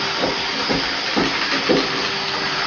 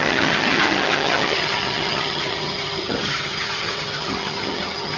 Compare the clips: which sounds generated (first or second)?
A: second